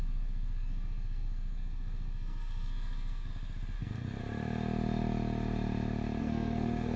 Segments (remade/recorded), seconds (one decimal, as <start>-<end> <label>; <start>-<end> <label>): 0.0-3.3 remade; 3.3-3.8 recorded; 3.8-4.2 remade; 4.2-6.2 recorded; 6.2-7.0 remade